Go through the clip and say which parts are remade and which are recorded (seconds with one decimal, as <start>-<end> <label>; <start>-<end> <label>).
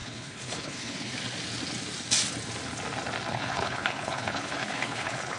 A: 0.0-1.1 remade; 1.1-3.3 recorded; 3.3-5.4 remade